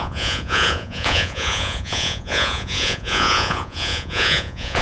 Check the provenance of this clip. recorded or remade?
remade